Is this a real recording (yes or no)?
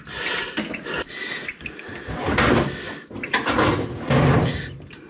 yes